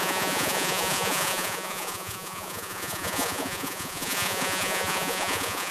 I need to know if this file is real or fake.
fake